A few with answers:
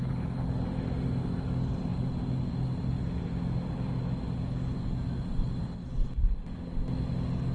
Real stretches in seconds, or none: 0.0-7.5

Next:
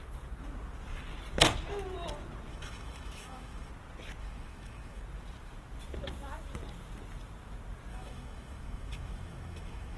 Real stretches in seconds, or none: 0.0-2.5; 3.7-4.2; 5.0-7.9

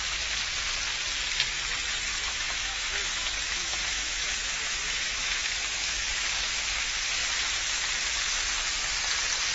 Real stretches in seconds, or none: 0.0-2.1; 6.6-9.5

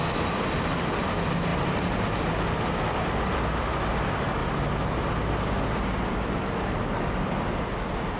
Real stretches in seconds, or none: 0.0-8.2